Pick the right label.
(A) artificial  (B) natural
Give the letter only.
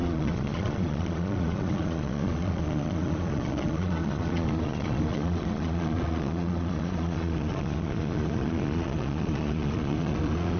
A